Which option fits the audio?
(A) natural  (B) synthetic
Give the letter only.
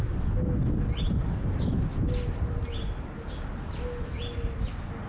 A